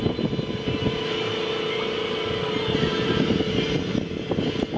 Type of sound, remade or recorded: recorded